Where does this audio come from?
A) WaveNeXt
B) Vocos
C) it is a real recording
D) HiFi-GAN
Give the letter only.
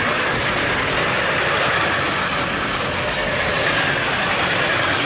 C